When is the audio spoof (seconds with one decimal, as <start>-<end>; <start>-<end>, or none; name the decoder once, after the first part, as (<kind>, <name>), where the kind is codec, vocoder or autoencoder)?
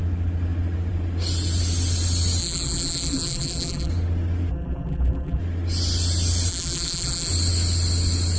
2.4-3.9 (vocoder, BigVGAN v2); 4.5-5.4; 6.5-7.3